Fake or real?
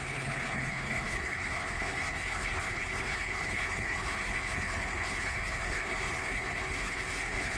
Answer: fake